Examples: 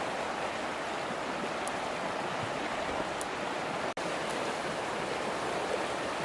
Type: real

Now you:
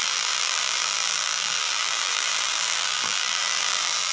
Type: fake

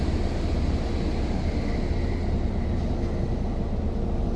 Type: real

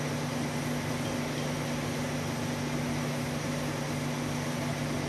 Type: real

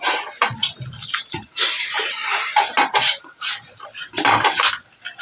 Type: fake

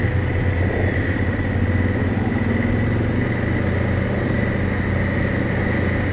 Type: real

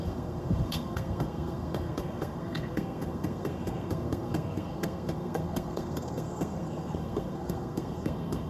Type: fake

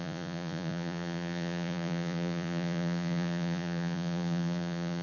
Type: fake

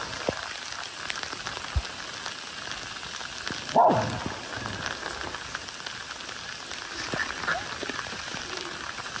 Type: real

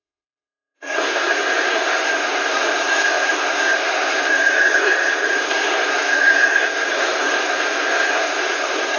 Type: fake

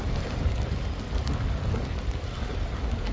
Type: real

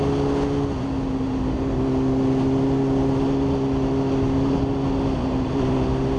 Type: real